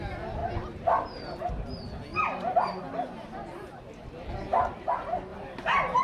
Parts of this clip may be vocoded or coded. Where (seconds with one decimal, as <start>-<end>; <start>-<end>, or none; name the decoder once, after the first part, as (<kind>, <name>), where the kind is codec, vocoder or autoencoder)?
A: 2.1-2.8 (vocoder, BigVGAN v2); 5.3-6.0